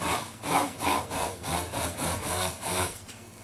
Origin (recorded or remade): remade